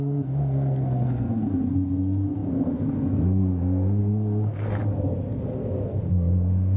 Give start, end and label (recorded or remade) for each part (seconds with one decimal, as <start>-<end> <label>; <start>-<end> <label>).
0.0-4.8 remade; 4.8-5.4 recorded; 5.4-6.8 remade